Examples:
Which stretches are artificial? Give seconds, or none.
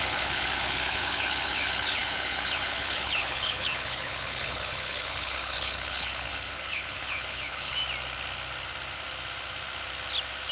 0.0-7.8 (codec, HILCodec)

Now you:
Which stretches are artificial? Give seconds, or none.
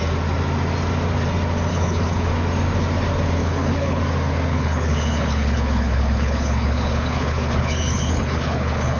1.7-2.3 (codec, HILCodec); 3.4-4.0; 4.5-9.0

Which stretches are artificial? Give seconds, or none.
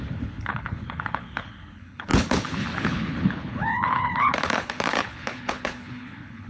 0.0-6.5 (codec, HILCodec)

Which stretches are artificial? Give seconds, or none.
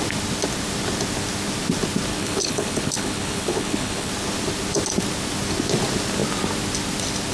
2.1-4.1 (codec, HILCodec)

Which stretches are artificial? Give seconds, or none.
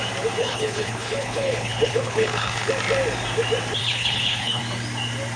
0.4-2.7 (codec, HILCodec); 3.8-4.6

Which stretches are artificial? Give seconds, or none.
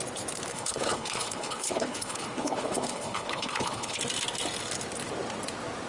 0.5-4.0 (codec, HILCodec)